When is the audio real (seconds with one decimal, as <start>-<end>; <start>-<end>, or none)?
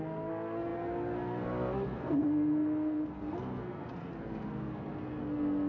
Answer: none